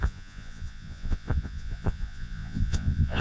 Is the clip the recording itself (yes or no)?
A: no